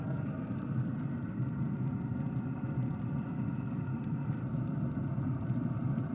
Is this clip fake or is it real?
fake